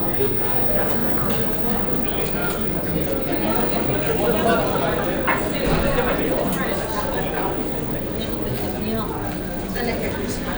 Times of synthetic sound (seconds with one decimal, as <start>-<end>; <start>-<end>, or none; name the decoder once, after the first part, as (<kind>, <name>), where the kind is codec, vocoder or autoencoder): none